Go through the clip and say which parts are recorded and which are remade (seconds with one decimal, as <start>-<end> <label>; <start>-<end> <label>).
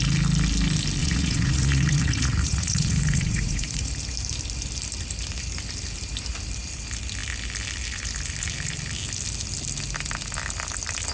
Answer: 0.0-1.0 recorded; 1.0-3.9 remade; 3.9-11.1 recorded